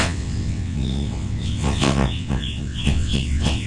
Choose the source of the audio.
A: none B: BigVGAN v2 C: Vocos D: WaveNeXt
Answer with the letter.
D